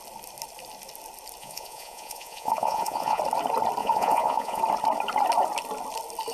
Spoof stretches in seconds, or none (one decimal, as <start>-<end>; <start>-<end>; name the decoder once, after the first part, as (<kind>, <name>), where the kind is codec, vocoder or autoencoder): 1.4-3.2 (vocoder, Vocos); 3.8-4.6